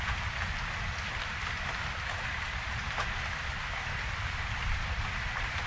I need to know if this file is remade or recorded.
remade